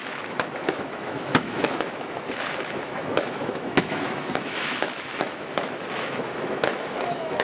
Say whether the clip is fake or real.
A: fake